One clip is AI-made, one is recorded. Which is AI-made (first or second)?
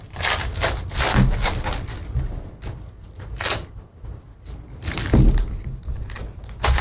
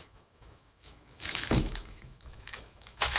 second